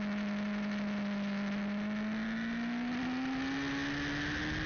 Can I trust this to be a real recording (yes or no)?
yes